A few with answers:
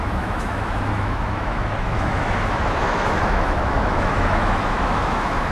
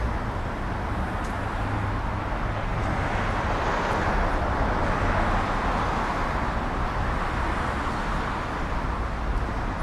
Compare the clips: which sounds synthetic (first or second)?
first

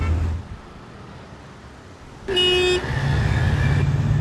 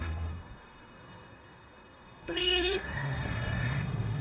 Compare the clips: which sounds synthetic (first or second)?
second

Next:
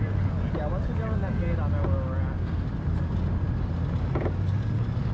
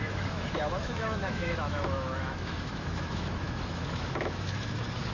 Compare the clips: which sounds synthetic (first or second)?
second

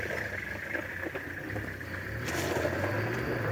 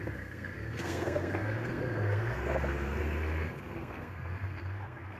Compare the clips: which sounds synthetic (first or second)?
second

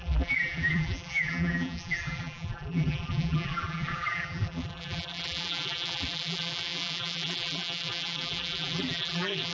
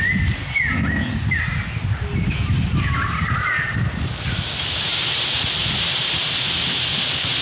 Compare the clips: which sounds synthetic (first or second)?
first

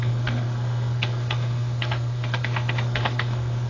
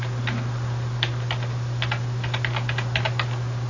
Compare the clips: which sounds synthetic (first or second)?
first